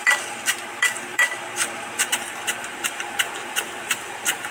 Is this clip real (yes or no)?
no